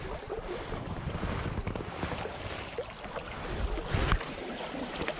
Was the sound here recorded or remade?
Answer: recorded